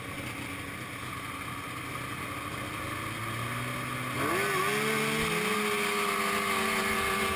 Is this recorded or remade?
recorded